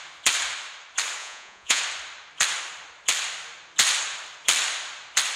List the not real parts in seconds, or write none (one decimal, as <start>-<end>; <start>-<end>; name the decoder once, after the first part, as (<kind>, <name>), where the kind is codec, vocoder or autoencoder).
1.2-1.8 (vocoder, Vocos)